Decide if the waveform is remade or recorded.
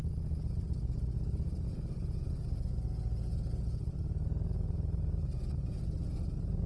remade